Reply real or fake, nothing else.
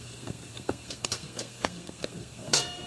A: fake